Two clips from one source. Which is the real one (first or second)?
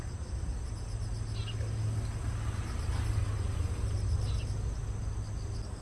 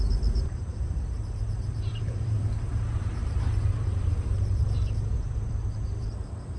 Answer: first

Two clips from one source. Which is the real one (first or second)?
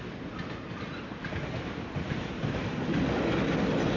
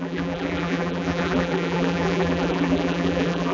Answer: first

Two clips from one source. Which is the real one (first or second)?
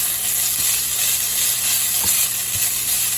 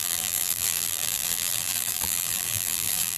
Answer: first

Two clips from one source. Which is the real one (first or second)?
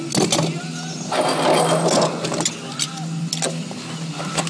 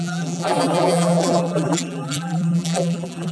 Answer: first